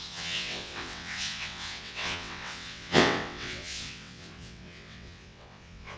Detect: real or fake fake